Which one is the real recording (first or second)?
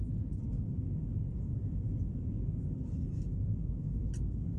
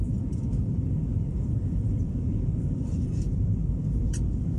first